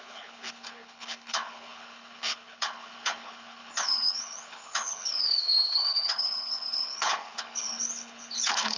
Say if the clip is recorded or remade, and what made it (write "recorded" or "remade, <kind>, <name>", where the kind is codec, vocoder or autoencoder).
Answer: remade, codec, HILCodec